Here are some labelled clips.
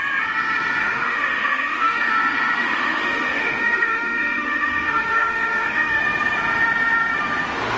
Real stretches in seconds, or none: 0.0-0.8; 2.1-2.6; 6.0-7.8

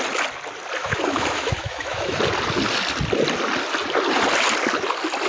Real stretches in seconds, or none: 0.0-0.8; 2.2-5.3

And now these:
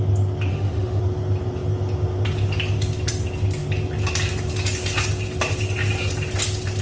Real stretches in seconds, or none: 0.0-0.5; 1.0-6.8

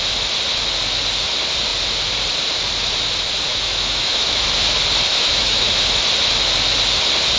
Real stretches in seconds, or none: 0.0-3.5; 4.4-5.1; 5.7-7.4

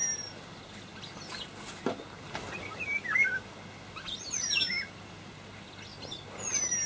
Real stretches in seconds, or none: 0.0-6.9